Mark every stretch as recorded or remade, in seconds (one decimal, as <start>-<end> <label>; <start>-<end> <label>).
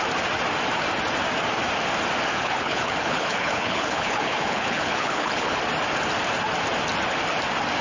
0.0-2.3 recorded; 2.3-5.6 remade; 5.6-7.8 recorded